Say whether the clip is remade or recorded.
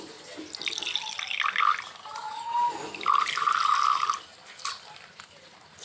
recorded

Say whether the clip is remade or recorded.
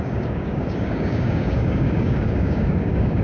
remade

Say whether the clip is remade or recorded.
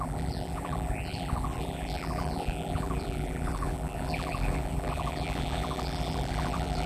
remade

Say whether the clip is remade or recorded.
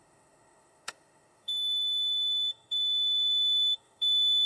remade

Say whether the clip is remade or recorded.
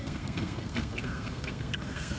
remade